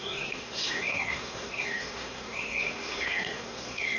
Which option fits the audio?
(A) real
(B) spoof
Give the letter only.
B